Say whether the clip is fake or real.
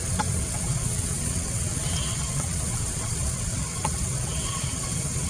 fake